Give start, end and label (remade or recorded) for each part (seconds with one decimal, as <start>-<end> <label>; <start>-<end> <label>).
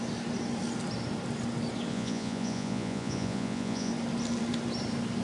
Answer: 0.0-1.9 recorded; 1.9-3.9 remade; 3.9-5.2 recorded